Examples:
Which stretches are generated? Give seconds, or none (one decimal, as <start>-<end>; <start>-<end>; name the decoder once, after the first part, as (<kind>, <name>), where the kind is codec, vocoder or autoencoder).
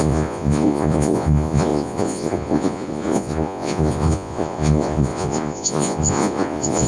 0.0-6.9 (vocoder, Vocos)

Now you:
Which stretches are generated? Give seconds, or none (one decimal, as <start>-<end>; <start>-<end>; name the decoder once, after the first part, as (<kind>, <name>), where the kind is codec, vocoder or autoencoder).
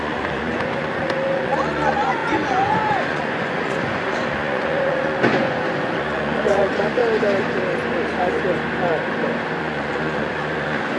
0.0-7.0 (vocoder, Vocos); 9.6-11.0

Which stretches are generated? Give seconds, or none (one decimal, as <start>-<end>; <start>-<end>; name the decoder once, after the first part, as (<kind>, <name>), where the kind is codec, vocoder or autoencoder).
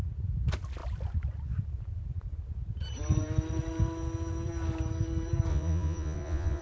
5.5-6.6 (vocoder, Vocos)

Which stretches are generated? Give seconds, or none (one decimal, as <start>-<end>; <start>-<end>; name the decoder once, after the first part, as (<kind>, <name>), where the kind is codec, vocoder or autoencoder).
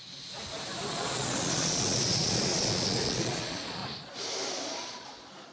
0.9-3.8 (vocoder, Vocos); 4.5-5.5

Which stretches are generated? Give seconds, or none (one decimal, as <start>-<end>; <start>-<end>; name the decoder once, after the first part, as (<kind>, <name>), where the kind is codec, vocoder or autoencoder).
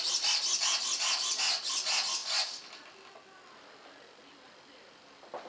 none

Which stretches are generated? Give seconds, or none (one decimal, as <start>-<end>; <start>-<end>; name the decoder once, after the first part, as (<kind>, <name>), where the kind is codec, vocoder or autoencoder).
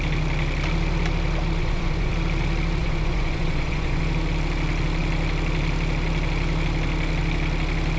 1.6-2.1 (vocoder, Vocos); 2.8-4.0